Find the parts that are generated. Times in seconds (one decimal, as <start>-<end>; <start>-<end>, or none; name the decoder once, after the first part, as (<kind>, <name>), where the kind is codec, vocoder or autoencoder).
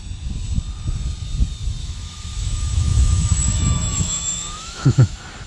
1.8-5.1 (autoencoder, DAC-VAE)